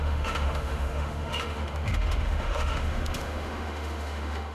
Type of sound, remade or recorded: remade